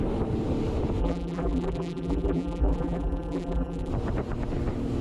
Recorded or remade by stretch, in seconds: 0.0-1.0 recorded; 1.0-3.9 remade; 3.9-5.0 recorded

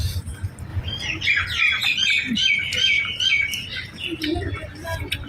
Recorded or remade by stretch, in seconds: 0.0-0.7 recorded; 0.7-1.3 remade; 1.3-1.8 recorded; 1.8-2.8 remade; 2.8-5.3 recorded

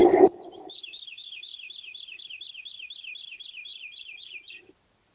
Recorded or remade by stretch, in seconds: 0.0-0.9 remade; 0.9-3.7 recorded; 3.7-4.6 remade; 4.6-5.1 recorded